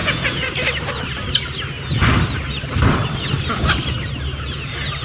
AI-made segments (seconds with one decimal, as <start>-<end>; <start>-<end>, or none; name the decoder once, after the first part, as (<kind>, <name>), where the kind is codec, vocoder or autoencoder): 0.0-0.5 (vocoder, Vocos)